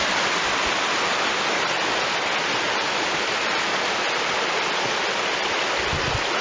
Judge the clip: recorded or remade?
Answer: recorded